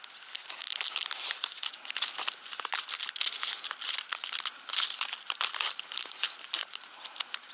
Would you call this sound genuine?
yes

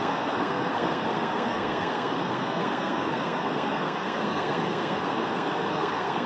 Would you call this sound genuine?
no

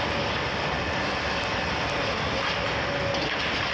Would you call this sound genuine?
yes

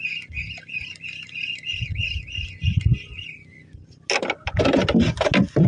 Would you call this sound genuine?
yes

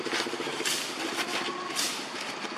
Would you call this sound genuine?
yes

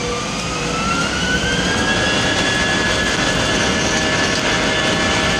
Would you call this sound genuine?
yes